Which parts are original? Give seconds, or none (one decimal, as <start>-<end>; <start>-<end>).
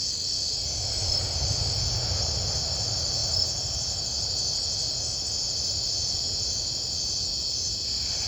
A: 0.0-8.3